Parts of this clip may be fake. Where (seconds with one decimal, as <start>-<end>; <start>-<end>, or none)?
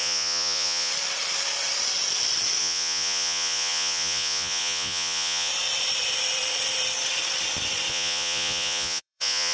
0.0-0.9; 2.6-5.5; 7.9-9.5